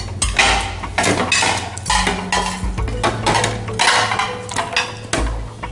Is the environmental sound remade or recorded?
recorded